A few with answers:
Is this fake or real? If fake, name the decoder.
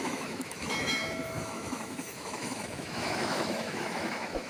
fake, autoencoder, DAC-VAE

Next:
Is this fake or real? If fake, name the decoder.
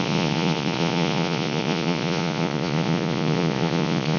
fake, vocoder, Vocos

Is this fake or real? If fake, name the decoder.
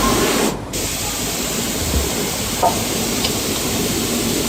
fake, vocoder, BigVGAN v2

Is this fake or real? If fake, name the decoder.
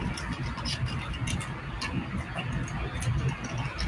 real